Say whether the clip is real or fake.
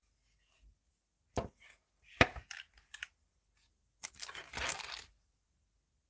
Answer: real